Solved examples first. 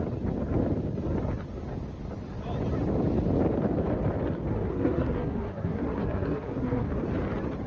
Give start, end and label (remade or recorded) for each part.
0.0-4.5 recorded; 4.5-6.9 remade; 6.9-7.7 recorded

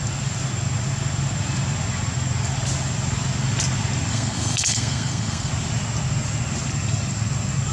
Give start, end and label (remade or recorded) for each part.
0.0-4.1 recorded; 4.1-5.5 remade; 5.5-7.7 recorded

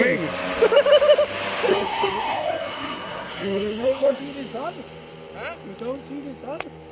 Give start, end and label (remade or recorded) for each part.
0.0-1.7 recorded; 1.7-4.2 remade; 4.2-6.9 recorded

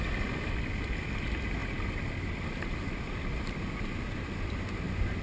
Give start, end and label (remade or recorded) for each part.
0.0-5.2 recorded

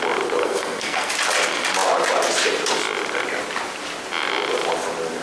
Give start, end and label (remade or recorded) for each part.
0.0-0.4 recorded; 0.4-1.1 remade; 1.1-5.2 recorded

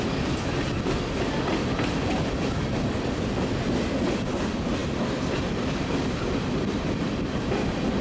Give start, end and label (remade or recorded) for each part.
0.0-8.0 recorded